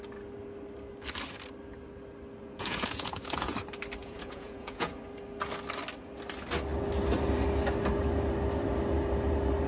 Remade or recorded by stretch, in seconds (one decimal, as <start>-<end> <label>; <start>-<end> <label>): 0.0-2.5 recorded; 2.5-3.5 remade; 3.5-4.0 recorded; 4.0-4.9 remade; 4.9-9.7 recorded